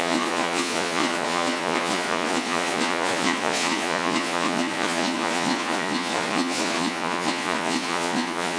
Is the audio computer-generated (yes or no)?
yes